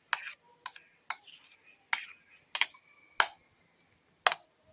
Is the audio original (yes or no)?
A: yes